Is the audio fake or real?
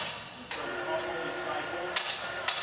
real